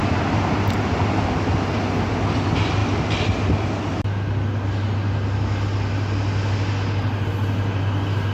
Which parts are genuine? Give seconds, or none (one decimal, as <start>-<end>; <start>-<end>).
0.0-8.3